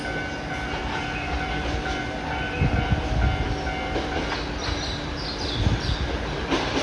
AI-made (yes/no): no